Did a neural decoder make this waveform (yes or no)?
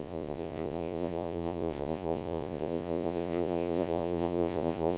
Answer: yes